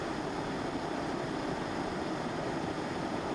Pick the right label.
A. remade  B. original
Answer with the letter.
A